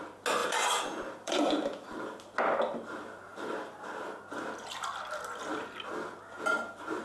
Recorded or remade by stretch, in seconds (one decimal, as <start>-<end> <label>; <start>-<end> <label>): 0.0-0.4 recorded; 0.4-2.2 remade; 2.2-3.3 recorded; 3.3-4.2 remade; 4.2-7.0 recorded